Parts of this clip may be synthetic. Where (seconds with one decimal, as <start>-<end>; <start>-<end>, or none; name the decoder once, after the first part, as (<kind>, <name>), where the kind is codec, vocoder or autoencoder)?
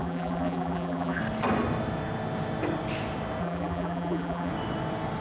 0.0-1.2 (vocoder, BigVGAN v2); 3.4-4.5